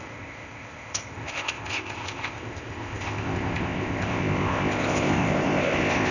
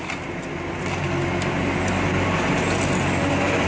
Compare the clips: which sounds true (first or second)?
second